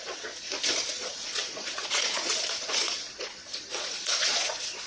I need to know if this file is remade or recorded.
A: remade